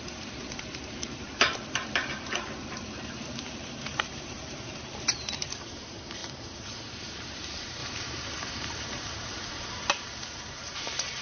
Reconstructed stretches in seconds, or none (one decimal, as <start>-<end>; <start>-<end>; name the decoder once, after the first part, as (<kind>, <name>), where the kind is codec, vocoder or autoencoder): 0.0-11.2 (vocoder, BigVGAN v2)